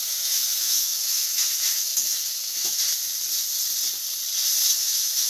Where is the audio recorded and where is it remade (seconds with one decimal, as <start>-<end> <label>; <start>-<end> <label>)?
0.0-2.8 remade; 2.8-4.7 recorded; 4.7-5.3 remade